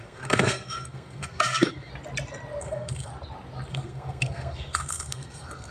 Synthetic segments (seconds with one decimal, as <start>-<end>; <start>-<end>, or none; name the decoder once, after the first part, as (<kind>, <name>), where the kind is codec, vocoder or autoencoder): 0.0-1.9 (codec, SNAC); 2.6-3.1; 3.7-5.7